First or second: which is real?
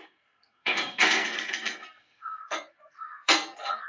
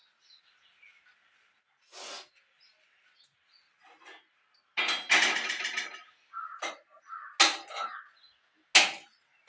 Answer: second